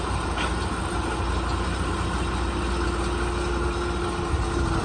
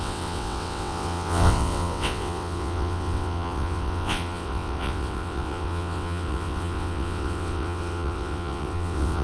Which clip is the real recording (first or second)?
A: first